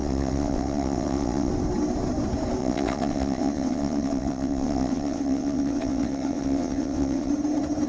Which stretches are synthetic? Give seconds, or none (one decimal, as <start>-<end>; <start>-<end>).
0.0-1.5; 2.6-7.3